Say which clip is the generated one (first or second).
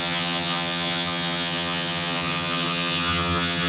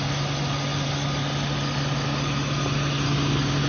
first